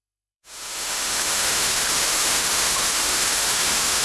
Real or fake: fake